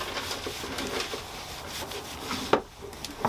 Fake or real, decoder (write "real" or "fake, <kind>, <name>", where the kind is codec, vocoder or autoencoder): real